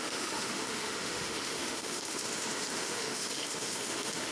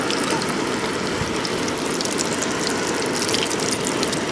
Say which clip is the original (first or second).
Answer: second